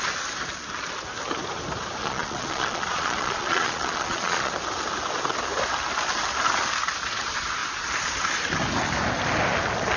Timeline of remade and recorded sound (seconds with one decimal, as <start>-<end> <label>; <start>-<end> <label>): 0.0-2.0 recorded; 2.0-4.5 remade; 4.5-10.0 recorded